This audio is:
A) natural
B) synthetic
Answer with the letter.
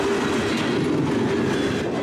A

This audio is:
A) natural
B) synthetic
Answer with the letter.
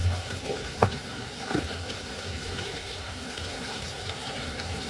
B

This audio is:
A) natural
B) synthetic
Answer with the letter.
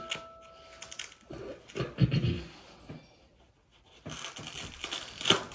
A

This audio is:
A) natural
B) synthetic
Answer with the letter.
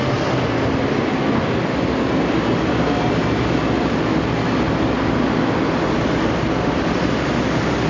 A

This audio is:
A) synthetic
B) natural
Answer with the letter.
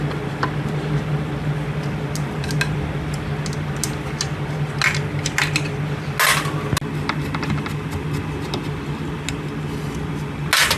B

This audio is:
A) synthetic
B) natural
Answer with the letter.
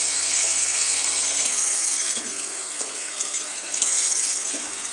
A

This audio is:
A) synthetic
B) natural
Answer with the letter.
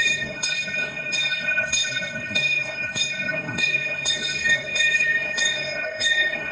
A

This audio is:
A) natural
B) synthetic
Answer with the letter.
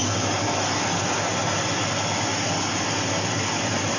A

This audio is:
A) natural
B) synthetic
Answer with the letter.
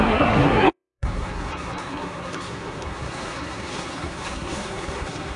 B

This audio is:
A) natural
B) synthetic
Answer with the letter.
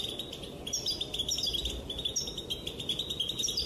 A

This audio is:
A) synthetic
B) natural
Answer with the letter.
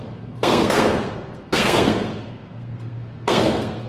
A